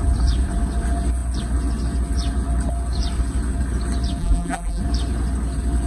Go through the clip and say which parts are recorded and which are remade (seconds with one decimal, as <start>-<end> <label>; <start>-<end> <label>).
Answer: 0.0-4.2 recorded; 4.2-4.8 remade; 4.8-5.9 recorded